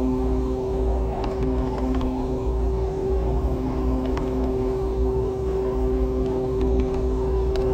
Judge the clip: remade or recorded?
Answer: remade